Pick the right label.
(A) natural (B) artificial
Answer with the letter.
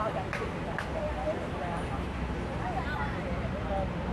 B